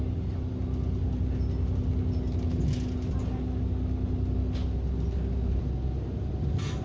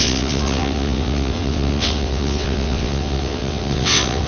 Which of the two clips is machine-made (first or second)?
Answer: second